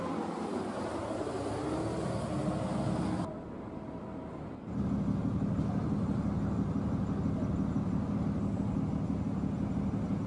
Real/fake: real